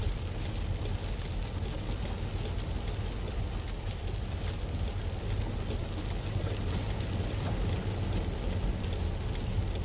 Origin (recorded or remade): recorded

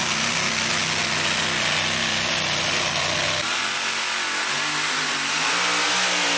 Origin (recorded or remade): recorded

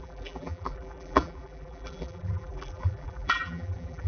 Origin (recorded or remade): remade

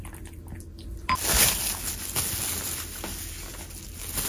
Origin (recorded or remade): recorded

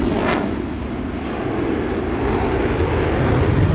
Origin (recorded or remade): recorded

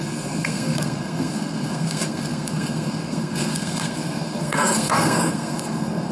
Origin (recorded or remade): remade